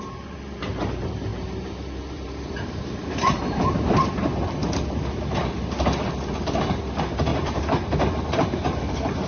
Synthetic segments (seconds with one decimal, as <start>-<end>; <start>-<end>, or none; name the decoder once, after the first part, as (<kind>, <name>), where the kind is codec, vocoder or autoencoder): 0.0-4.6 (vocoder, BigVGAN v2); 6.4-9.3